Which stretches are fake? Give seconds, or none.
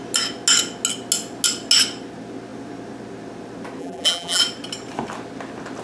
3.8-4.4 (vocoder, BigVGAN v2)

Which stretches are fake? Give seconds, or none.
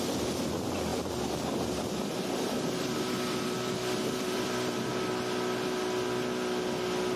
0.9-4.9 (vocoder, BigVGAN v2)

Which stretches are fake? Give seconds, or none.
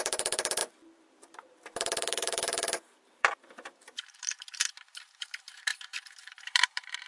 0.0-7.1 (vocoder, BigVGAN v2)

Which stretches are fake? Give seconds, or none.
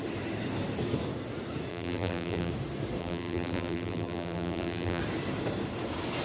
1.7-2.5 (vocoder, BigVGAN v2); 3.0-5.0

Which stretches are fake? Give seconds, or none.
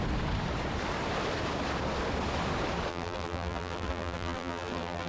2.9-5.1 (vocoder, BigVGAN v2)